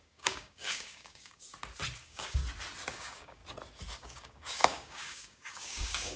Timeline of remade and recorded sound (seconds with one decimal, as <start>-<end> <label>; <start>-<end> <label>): 0.0-1.5 remade; 1.5-2.0 recorded; 2.0-2.4 remade; 2.4-2.9 recorded; 2.9-3.4 remade; 3.4-3.9 recorded; 3.9-6.2 remade